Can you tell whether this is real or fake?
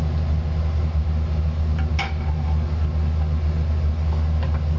real